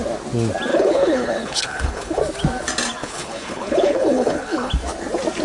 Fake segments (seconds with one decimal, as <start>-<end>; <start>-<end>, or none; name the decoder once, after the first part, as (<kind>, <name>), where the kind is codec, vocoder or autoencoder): 0.7-2.2 (codec, HILCodec); 3.0-4.7